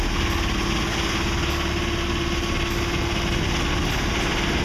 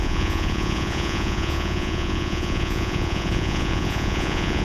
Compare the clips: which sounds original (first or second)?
first